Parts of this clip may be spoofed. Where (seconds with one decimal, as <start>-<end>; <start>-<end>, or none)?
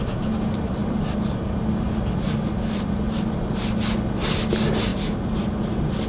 0.8-3.3; 4.9-5.6